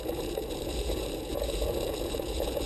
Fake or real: fake